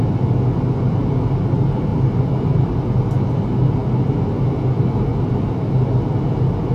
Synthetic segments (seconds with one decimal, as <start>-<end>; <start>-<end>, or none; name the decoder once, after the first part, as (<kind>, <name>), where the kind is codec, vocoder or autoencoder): 1.9-2.8 (vocoder, BigVGAN v2)